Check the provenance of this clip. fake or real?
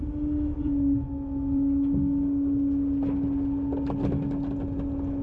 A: real